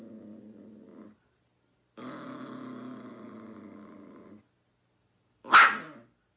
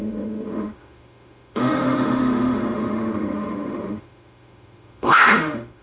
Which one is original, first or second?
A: first